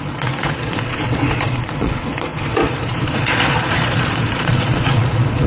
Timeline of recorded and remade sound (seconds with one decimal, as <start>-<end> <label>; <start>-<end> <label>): 0.0-5.5 remade